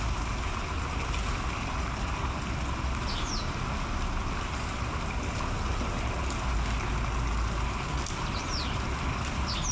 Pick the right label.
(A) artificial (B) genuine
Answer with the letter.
B